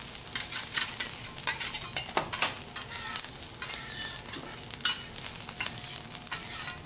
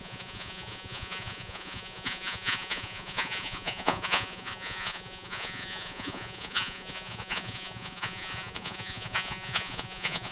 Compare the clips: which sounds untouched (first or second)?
first